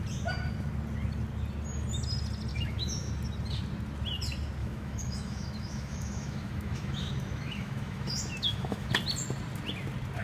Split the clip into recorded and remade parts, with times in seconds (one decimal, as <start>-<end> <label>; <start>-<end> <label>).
0.0-2.5 recorded; 2.5-3.1 remade; 3.1-4.6 recorded; 4.6-8.9 remade; 8.9-10.2 recorded